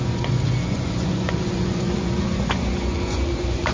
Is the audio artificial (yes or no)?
yes